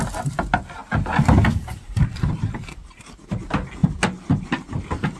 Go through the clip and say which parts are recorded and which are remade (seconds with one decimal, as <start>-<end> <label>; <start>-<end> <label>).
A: 0.0-5.2 recorded